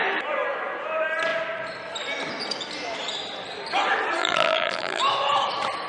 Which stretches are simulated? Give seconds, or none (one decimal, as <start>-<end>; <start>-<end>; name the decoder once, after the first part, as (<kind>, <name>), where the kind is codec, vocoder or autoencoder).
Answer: 4.2-5.0 (vocoder, BigVGAN v2)